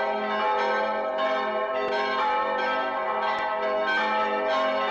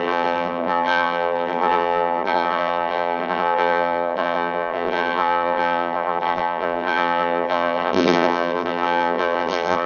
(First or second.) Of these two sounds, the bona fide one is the first